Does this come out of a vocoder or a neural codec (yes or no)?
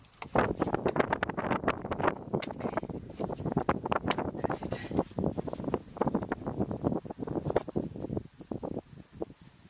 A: no